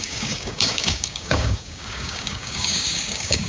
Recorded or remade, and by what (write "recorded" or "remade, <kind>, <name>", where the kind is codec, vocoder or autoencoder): remade, codec, DAC